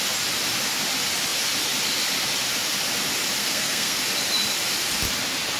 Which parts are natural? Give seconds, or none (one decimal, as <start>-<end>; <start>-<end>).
0.0-3.4; 4.0-5.6